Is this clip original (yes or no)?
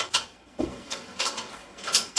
no